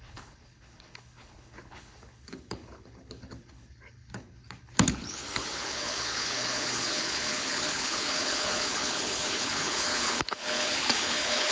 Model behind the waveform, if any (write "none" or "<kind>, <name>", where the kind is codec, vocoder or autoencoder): codec, HILCodec